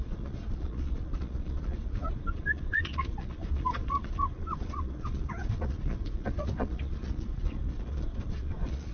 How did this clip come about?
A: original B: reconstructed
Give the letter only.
B